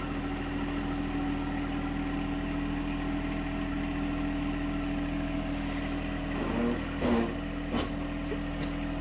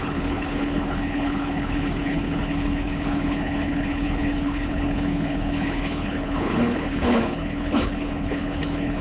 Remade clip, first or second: second